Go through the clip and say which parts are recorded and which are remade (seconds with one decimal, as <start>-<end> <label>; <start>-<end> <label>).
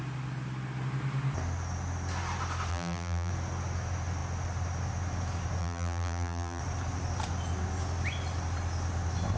0.0-2.7 recorded; 2.7-3.3 remade; 3.3-5.6 recorded; 5.6-6.6 remade; 6.6-9.4 recorded